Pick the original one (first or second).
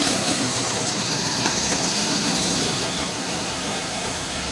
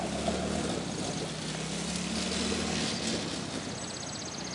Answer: second